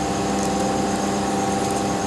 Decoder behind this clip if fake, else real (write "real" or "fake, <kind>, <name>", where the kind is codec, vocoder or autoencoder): real